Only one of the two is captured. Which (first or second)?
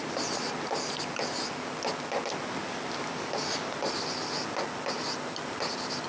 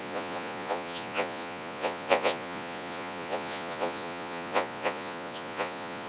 first